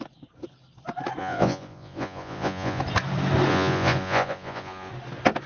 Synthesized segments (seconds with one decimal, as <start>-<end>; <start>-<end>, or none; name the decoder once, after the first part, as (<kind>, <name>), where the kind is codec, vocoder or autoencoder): 1.2-2.8 (vocoder, Vocos); 3.5-4.9